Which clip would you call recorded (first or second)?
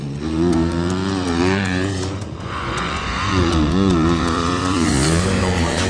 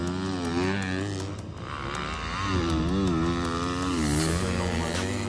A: second